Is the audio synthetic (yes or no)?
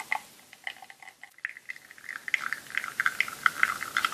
no